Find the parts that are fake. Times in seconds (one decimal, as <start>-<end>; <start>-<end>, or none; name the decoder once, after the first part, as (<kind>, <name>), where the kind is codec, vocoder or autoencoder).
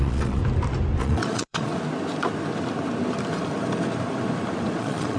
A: 0.0-0.4 (vocoder, Vocos); 1.0-1.7; 4.8-5.2